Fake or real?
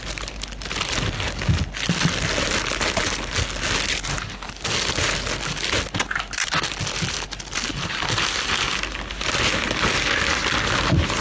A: real